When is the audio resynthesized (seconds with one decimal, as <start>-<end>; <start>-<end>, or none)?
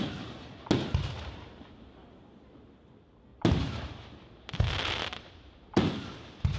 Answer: none